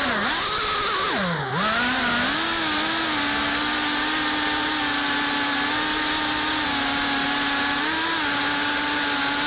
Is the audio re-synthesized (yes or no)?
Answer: no